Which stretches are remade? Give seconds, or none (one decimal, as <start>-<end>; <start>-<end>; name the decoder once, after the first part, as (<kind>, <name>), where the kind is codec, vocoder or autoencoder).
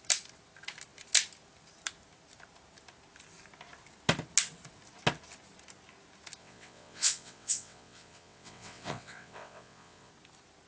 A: 6.4-10.1 (vocoder, WaveNeXt)